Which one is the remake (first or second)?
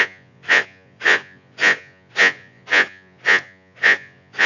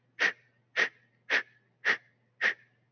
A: first